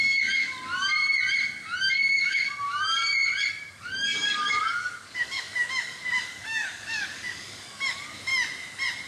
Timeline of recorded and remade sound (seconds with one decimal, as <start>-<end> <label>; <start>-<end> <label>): 0.0-0.9 remade; 0.9-1.8 recorded; 1.8-3.0 remade; 3.0-3.5 recorded; 3.5-8.3 remade; 8.3-9.1 recorded